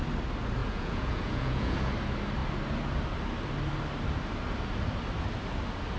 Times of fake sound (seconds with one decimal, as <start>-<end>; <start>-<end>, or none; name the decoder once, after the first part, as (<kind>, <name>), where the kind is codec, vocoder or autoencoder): 0.6-1.9 (vocoder, Vocos)